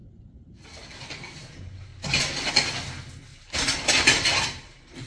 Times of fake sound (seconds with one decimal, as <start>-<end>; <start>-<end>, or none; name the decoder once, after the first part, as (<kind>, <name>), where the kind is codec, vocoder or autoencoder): 3.3-5.1 (vocoder, BigVGAN v2)